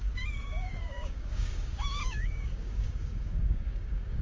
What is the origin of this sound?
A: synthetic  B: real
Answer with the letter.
A